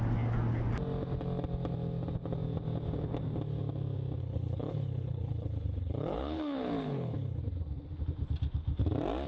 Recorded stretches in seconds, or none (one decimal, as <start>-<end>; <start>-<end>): 0.0-4.2; 7.4-9.3